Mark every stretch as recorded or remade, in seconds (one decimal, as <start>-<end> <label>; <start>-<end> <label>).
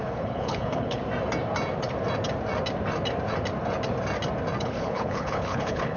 0.0-1.0 remade; 1.0-4.6 recorded; 4.6-6.0 remade